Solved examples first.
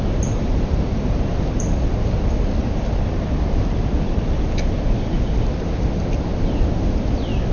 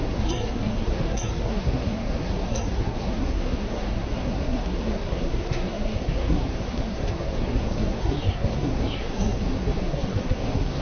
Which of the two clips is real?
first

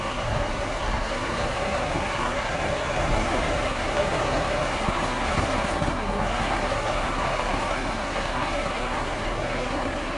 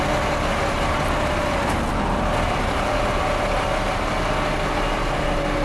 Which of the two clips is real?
second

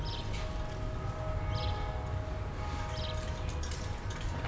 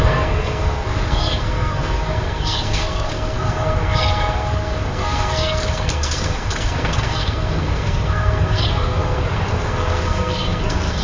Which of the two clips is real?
first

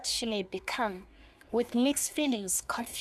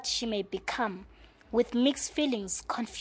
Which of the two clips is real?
second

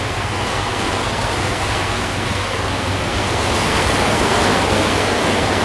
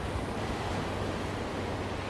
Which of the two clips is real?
second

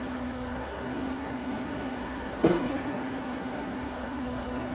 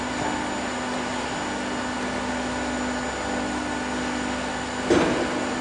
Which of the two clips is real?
second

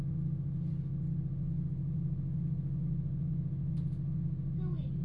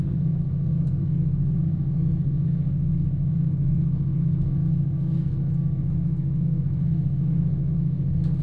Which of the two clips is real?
first